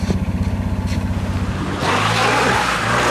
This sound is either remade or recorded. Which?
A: recorded